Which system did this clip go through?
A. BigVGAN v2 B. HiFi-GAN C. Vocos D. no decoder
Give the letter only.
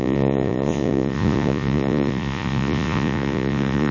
C